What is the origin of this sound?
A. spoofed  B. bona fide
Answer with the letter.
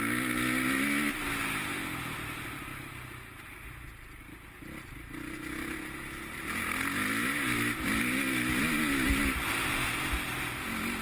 B